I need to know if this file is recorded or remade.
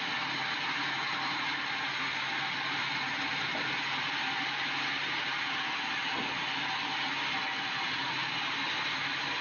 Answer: recorded